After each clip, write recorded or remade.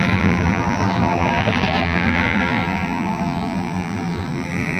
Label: remade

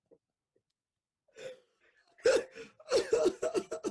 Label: recorded